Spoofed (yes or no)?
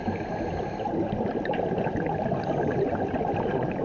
no